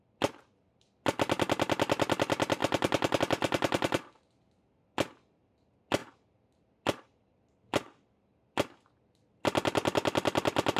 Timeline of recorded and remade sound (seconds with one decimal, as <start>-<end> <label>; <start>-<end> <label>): 0.0-10.8 recorded